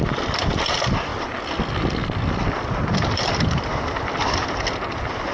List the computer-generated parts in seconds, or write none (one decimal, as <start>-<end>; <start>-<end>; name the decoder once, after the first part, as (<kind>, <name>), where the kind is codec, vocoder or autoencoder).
none

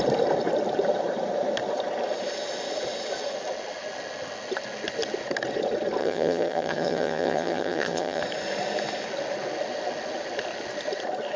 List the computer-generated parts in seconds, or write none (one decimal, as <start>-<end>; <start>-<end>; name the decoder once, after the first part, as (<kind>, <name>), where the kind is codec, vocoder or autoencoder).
6.0-8.2 (vocoder, HiFi-GAN)